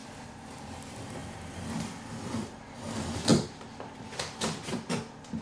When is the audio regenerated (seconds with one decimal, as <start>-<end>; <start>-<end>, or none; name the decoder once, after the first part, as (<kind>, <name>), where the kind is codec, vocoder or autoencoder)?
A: 0.0-1.2 (vocoder, BigVGAN v2); 2.1-5.4

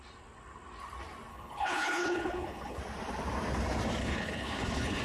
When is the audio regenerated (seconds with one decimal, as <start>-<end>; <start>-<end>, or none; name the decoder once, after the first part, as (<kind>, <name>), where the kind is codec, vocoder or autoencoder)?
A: 1.3-2.8 (codec, HILCodec); 4.0-5.0